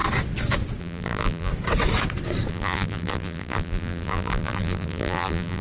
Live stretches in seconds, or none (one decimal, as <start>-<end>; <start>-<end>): 0.0-0.8; 1.5-2.5

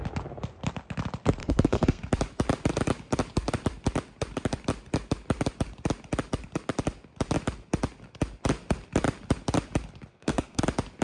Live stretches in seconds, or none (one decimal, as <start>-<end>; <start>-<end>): 0.0-1.4; 2.0-10.1; 10.6-11.0

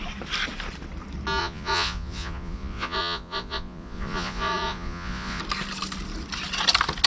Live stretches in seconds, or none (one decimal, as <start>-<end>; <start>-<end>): 0.0-1.4; 5.4-7.1